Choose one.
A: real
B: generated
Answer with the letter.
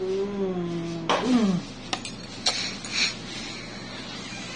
A